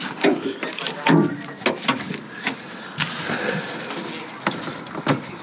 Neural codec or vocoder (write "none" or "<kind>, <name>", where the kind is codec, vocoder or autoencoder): none